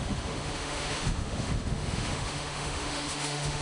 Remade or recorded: remade